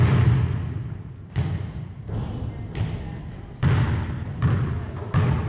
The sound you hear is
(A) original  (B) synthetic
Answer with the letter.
A